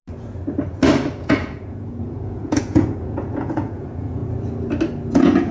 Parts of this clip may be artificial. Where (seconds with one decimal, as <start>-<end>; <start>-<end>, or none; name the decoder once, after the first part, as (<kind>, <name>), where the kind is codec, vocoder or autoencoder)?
1.2-4.2 (vocoder, Vocos); 5.1-5.5